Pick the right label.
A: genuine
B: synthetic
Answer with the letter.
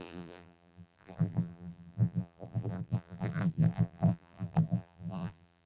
B